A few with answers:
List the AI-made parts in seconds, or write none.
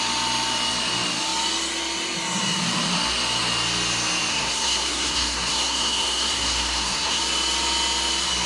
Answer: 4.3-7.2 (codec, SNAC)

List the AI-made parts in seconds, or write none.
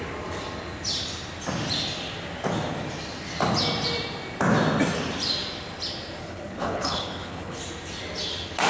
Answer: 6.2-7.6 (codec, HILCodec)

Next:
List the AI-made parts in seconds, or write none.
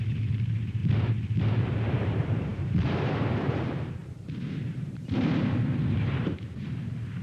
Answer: 0.0-7.2 (vocoder, BigVGAN v2)